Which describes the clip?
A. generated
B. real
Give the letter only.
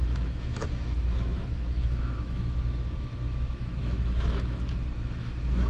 A